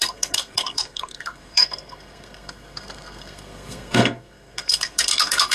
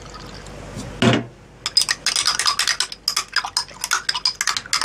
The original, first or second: second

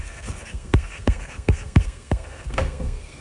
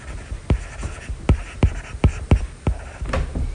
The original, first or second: second